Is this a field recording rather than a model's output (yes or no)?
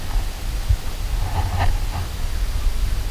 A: yes